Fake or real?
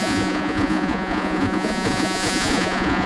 fake